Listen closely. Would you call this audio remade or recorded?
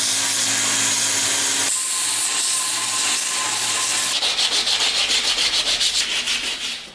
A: recorded